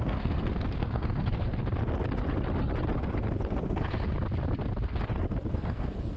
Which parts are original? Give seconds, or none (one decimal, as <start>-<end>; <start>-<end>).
1.6-3.5; 4.1-5.5